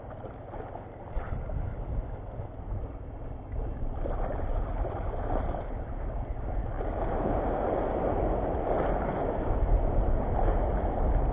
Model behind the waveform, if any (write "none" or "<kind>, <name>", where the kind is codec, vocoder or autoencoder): none